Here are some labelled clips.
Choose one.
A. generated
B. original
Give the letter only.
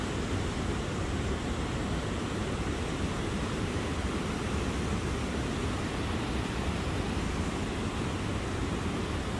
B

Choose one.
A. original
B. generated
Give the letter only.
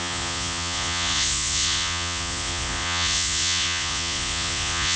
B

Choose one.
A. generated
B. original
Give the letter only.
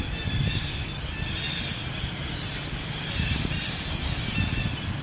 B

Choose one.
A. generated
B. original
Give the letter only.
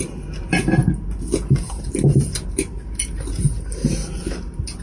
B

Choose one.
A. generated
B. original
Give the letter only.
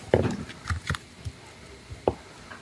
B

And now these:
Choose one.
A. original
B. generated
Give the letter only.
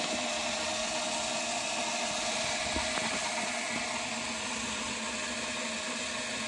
A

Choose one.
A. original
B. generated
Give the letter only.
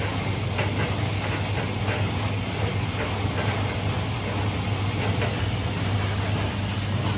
A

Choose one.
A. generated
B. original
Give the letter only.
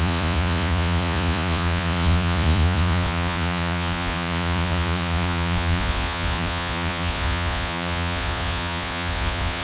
A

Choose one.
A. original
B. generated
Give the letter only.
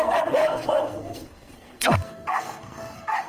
B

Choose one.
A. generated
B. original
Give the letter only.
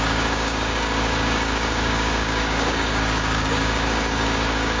A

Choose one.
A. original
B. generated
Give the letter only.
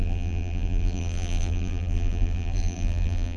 B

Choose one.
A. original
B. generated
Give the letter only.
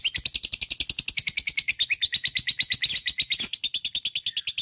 A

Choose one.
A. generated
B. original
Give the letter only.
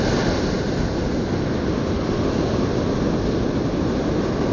B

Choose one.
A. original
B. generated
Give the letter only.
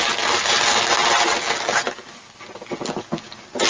A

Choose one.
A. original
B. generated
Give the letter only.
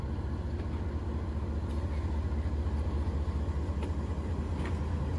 A